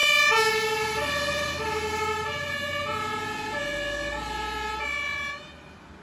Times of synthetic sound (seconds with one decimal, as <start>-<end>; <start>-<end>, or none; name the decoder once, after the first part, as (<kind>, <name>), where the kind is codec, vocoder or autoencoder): none